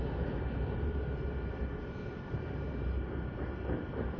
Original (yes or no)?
no